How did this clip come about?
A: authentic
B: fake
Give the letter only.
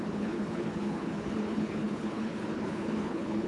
B